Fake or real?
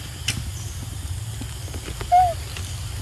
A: real